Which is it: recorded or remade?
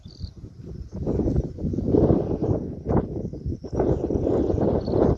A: recorded